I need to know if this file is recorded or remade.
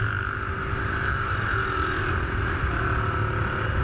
recorded